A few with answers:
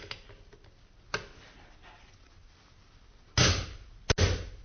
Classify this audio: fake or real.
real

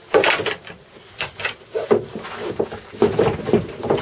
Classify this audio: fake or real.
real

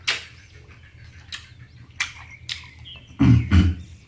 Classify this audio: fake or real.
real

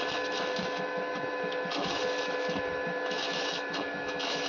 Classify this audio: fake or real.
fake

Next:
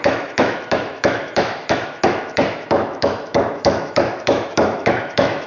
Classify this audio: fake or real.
fake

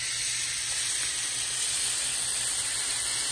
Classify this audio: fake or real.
real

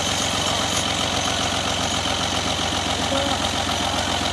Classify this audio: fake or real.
real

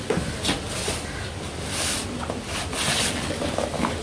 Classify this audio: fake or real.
real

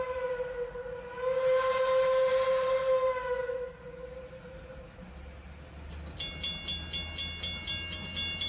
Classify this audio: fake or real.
real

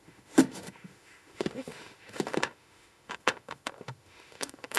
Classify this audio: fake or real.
fake